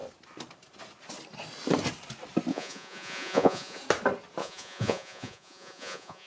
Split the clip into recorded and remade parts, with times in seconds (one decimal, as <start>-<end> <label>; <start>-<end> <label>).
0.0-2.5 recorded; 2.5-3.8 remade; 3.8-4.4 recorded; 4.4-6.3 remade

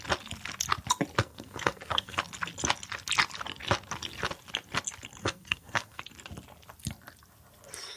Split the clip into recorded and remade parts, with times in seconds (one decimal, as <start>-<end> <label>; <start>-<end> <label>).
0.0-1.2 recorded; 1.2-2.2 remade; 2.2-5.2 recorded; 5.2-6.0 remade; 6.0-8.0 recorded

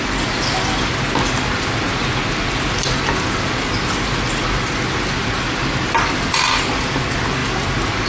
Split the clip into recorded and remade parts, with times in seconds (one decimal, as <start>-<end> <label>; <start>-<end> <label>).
0.0-8.1 recorded